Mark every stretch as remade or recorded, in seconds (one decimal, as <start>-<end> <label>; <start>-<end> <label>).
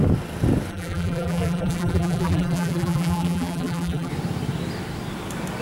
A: 0.0-0.7 recorded; 0.7-4.1 remade; 4.1-5.6 recorded